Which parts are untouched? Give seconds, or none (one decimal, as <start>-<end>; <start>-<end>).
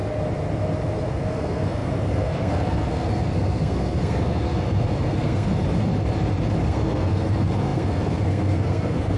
0.0-1.1; 5.5-6.6